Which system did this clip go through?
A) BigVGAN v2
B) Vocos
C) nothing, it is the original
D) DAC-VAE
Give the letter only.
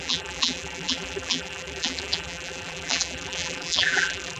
A